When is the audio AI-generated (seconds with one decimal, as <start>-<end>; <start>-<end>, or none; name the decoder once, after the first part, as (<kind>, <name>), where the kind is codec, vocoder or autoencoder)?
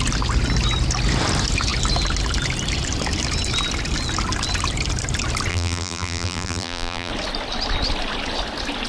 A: 5.5-7.1 (vocoder, BigVGAN v2)